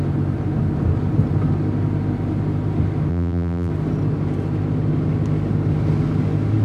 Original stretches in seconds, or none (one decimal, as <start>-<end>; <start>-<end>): 0.0-3.1; 3.7-6.6